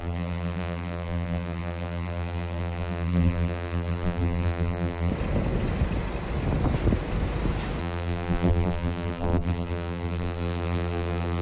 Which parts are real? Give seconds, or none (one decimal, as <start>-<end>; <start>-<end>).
5.1-7.8